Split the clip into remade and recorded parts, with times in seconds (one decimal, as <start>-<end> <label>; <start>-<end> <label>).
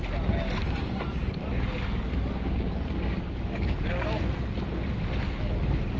0.0-0.6 recorded; 0.6-4.2 remade; 4.2-6.0 recorded